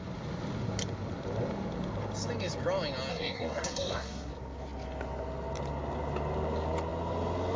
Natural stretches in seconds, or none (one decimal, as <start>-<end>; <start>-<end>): 0.0-3.1; 4.3-7.6